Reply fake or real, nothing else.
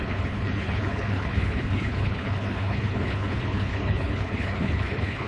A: fake